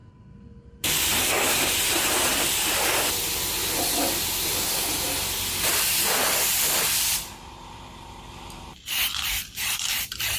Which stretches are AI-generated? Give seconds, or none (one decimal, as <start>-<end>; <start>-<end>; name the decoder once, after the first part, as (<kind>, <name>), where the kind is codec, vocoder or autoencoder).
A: 1.1-10.4 (vocoder, BigVGAN v2)